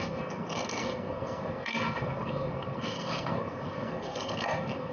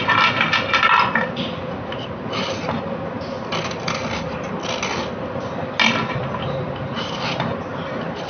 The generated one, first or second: first